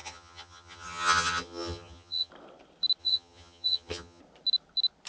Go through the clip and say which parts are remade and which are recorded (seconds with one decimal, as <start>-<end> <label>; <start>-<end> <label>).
0.0-2.3 remade; 2.3-3.0 recorded; 3.0-4.2 remade; 4.2-5.1 recorded

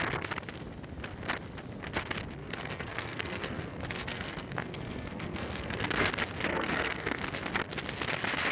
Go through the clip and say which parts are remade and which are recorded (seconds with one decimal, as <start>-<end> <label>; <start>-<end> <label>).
0.0-2.4 recorded; 2.4-6.1 remade; 6.1-6.5 recorded; 6.5-7.2 remade; 7.2-8.5 recorded

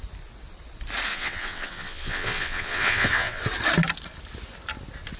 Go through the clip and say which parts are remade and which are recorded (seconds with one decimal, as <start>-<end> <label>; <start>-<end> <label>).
0.0-1.1 recorded; 1.1-3.4 remade; 3.4-5.2 recorded

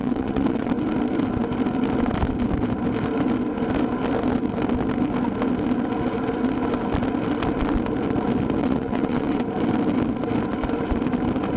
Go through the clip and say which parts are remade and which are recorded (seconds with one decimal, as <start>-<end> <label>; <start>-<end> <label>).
0.0-0.7 remade; 0.7-8.6 recorded; 8.6-9.4 remade; 9.4-11.6 recorded

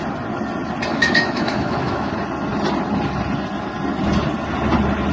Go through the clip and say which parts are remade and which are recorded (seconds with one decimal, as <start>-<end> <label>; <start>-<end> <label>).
0.0-0.9 recorded; 0.9-2.1 remade; 2.1-5.1 recorded